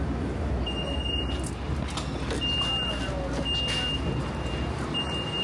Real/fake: real